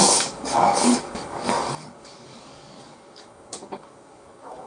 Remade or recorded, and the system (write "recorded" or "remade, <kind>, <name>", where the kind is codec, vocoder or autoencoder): remade, codec, DAC